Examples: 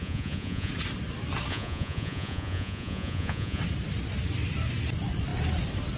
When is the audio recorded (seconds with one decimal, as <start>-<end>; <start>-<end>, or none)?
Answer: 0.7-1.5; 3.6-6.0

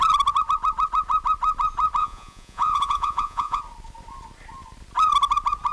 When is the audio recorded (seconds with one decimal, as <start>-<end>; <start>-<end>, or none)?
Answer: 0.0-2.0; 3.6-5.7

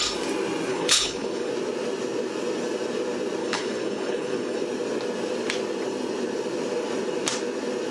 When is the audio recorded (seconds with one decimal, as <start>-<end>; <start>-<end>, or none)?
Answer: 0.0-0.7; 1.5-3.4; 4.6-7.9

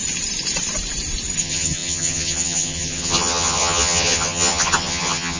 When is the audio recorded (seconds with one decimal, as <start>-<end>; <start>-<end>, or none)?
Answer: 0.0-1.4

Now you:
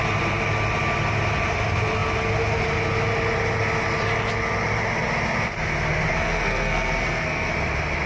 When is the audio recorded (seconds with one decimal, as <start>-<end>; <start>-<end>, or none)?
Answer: 0.0-6.1; 7.5-8.1

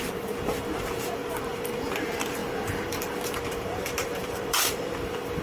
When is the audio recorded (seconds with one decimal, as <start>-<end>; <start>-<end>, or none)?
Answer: none

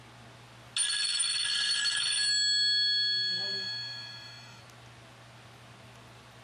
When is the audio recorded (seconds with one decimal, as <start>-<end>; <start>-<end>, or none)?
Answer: 0.0-0.8; 4.6-6.4

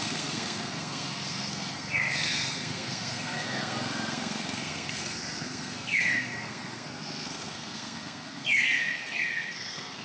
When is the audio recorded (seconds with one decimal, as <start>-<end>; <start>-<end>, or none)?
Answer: none